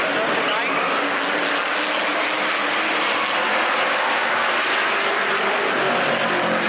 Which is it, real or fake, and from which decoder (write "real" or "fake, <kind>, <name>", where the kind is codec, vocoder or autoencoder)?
real